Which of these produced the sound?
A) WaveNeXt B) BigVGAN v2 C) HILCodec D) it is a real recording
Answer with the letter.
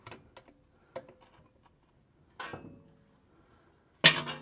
D